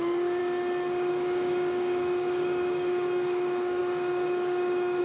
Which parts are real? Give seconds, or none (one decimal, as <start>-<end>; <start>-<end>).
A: 0.4-1.1